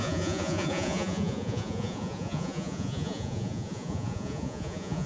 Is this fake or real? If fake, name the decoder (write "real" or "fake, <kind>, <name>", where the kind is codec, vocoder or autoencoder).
fake, vocoder, Vocos